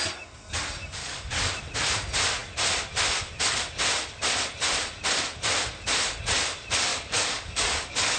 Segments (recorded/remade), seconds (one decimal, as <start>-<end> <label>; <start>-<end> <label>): 0.0-1.0 recorded; 1.0-1.5 remade; 1.5-6.9 recorded; 6.9-8.2 remade